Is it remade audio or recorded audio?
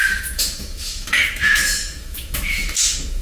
remade